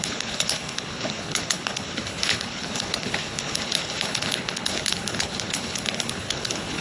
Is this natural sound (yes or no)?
no